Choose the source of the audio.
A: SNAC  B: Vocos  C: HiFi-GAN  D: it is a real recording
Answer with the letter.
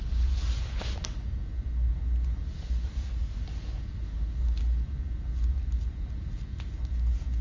D